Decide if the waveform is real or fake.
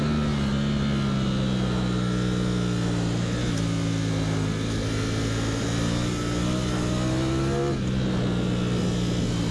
real